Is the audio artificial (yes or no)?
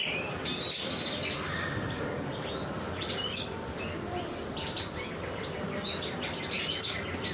no